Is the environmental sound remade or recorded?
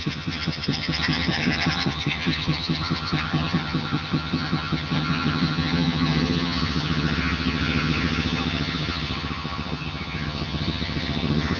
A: remade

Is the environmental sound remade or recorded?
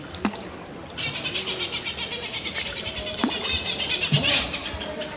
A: recorded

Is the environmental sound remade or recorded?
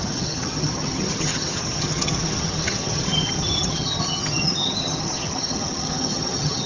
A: remade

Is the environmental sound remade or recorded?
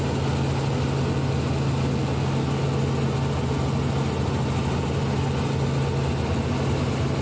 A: recorded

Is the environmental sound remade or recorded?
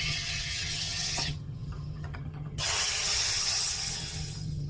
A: remade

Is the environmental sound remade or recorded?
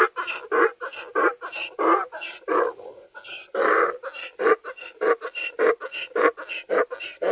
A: recorded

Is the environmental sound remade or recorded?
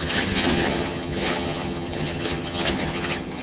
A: remade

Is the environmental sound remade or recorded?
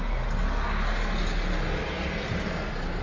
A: recorded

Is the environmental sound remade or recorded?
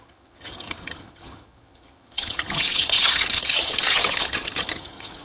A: remade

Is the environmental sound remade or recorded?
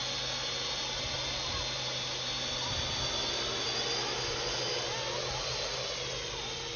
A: recorded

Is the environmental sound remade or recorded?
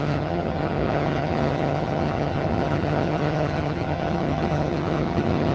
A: remade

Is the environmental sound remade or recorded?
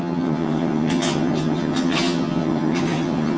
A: remade